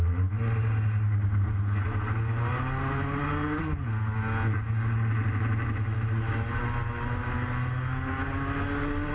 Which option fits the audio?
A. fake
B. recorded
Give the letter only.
B